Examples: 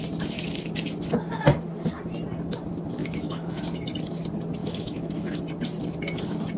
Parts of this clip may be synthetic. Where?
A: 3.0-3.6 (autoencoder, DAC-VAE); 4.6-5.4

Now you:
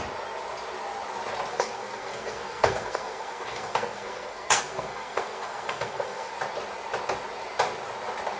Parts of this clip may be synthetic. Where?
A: 1.5-6.3 (codec, SNAC)

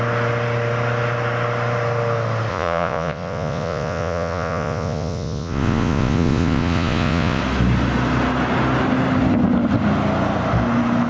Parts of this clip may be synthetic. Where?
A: 2.5-7.4 (vocoder, Vocos)

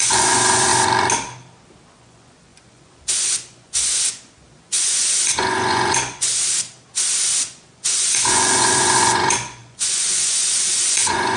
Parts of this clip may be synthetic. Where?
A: 0.0-0.7 (vocoder, Vocos); 1.9-6.3; 7.4-11.4

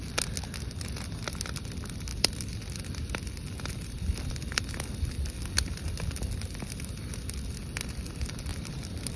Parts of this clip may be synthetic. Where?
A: 8.5-9.2 (vocoder, BigVGAN v2)

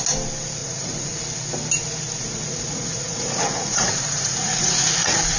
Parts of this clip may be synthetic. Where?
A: 0.6-1.2 (vocoder, Vocos); 2.5-5.4

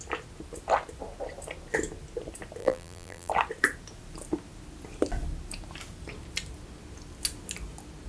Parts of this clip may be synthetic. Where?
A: 2.6-3.3 (vocoder, BigVGAN v2)